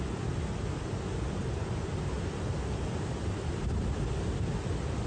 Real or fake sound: real